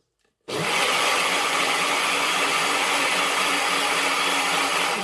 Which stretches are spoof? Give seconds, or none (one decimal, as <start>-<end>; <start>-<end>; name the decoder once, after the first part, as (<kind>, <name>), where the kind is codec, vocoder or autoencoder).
0.7-3.7 (vocoder, Vocos)